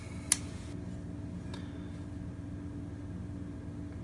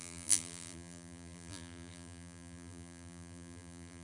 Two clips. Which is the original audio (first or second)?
first